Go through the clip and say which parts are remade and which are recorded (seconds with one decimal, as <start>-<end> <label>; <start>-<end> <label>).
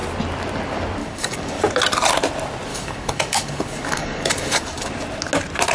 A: 0.0-1.0 recorded; 1.0-1.6 remade; 1.6-2.7 recorded; 2.7-4.9 remade; 4.9-5.7 recorded